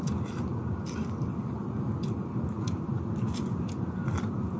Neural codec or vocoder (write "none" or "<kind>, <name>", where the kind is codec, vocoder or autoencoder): none